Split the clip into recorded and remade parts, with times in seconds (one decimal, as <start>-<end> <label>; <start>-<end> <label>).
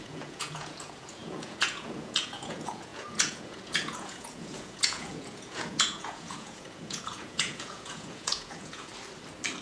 0.0-8.9 remade; 8.9-9.6 recorded